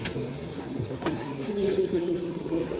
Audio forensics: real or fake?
fake